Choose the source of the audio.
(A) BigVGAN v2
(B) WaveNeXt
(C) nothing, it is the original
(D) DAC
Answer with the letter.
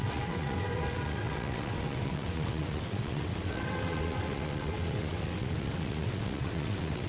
B